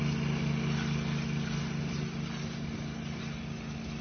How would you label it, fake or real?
real